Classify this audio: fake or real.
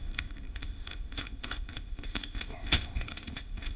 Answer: fake